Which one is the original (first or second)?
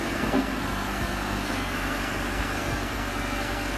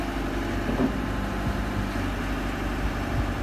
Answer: second